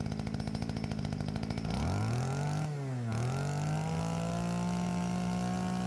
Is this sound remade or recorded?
recorded